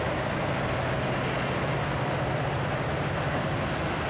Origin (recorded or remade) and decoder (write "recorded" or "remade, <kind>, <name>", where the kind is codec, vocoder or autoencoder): recorded